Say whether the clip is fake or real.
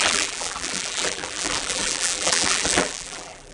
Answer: fake